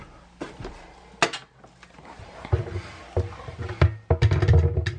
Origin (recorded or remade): recorded